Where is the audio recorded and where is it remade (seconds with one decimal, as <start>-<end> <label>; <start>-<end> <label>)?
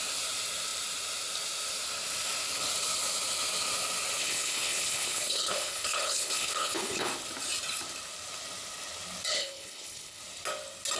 0.0-4.2 recorded; 4.2-7.1 remade; 7.1-9.3 recorded; 9.3-10.2 remade; 10.2-11.0 recorded